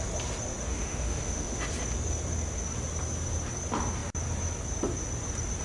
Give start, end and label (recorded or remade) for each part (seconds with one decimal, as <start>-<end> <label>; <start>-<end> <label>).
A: 0.0-0.6 recorded; 0.6-1.6 remade; 1.6-5.6 recorded